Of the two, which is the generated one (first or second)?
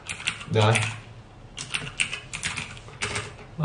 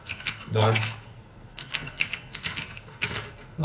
second